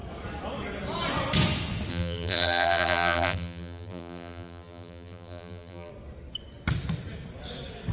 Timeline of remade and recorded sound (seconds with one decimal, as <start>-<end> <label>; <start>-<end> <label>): 0.0-1.9 recorded; 1.9-5.9 remade; 5.9-7.9 recorded